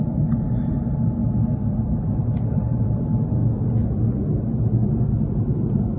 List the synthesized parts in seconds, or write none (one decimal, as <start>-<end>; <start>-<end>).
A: 0.0-1.2; 1.8-3.4